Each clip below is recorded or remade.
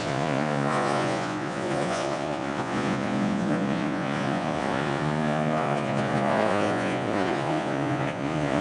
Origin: remade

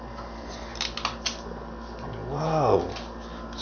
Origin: recorded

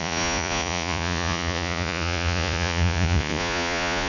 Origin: remade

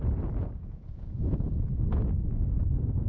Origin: remade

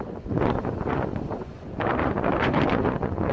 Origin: remade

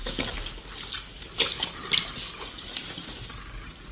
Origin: recorded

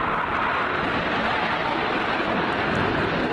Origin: recorded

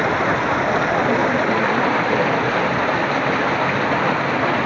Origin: recorded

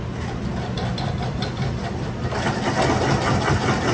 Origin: recorded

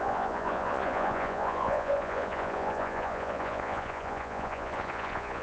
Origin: remade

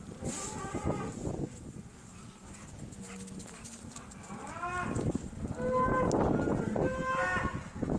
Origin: recorded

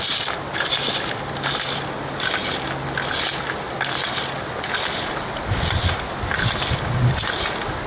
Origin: recorded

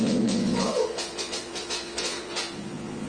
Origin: remade